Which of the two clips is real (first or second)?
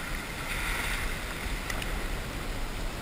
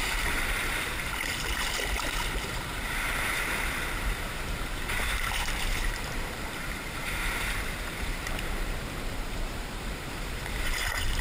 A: first